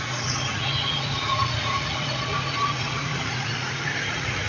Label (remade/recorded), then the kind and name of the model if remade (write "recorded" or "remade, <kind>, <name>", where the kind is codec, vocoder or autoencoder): remade, vocoder, Vocos